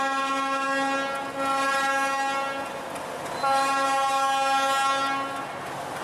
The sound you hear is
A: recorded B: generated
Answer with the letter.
A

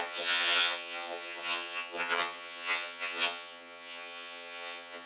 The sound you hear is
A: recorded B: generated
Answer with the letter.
B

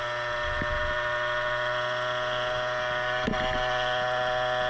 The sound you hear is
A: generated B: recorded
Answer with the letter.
B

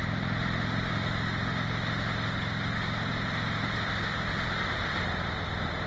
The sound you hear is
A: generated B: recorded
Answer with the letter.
B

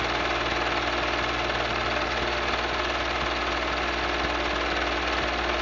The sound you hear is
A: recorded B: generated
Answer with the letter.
A